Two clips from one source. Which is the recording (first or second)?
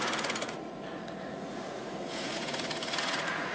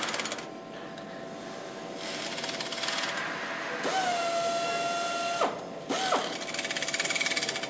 second